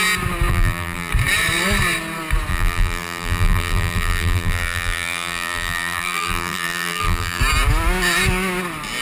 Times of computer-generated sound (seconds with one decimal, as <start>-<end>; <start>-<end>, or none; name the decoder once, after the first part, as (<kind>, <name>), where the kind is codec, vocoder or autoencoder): 0.5-1.1 (vocoder, BigVGAN v2); 2.5-7.4